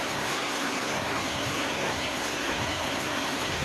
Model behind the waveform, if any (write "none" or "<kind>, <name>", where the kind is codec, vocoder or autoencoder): codec, SNAC